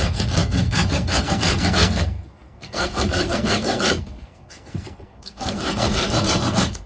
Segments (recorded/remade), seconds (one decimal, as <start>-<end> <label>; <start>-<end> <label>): 0.0-6.9 remade